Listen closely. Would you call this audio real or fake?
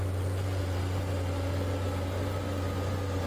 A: real